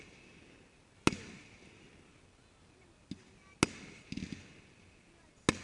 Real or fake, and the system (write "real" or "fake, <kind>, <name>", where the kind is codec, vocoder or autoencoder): real